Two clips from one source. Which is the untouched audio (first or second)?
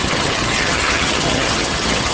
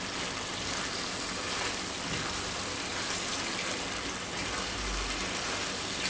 second